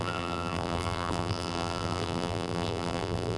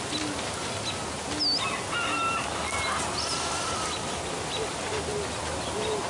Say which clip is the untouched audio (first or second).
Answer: second